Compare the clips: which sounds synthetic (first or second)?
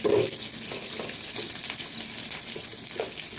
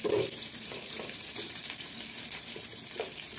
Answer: second